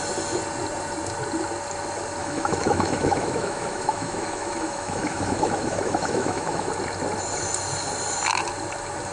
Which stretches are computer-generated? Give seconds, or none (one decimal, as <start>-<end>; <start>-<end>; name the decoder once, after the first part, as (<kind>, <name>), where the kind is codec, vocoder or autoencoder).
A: 2.2-6.7 (autoencoder, DAC-VAE)